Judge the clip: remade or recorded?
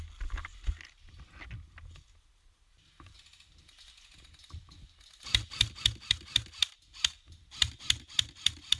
recorded